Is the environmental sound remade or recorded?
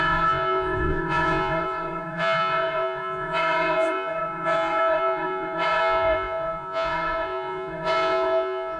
remade